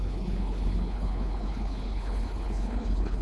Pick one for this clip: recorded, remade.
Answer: remade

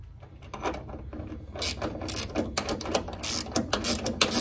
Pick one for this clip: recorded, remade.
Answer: recorded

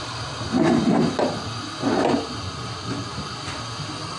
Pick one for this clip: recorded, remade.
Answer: recorded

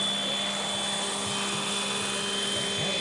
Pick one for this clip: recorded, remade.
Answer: recorded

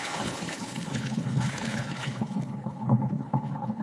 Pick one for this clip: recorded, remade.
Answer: remade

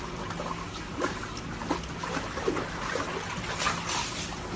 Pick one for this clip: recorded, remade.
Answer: recorded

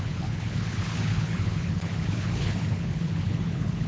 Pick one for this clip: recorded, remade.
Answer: remade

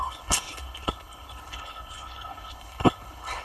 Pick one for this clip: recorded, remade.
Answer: remade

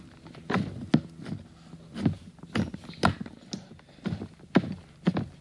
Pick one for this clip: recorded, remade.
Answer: recorded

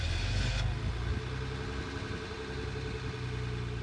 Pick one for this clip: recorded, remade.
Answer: recorded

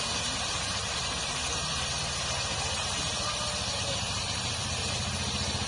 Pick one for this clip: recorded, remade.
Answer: recorded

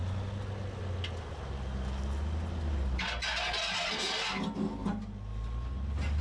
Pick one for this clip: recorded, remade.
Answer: recorded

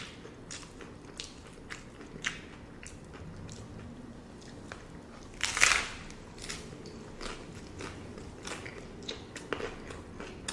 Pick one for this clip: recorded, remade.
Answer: recorded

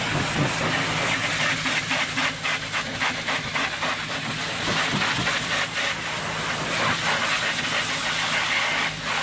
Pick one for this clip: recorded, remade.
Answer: recorded